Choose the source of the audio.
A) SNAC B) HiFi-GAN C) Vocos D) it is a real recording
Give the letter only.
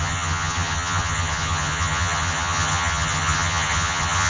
B